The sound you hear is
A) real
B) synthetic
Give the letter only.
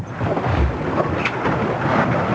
B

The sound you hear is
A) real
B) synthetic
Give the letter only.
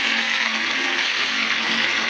B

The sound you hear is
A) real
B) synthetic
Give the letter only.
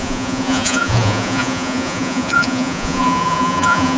B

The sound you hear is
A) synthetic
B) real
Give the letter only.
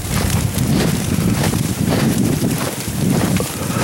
A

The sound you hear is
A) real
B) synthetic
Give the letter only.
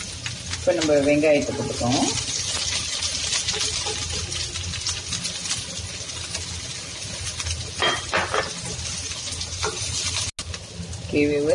A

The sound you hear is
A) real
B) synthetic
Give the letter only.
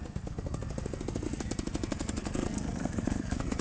B